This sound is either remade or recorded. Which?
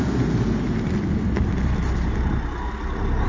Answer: recorded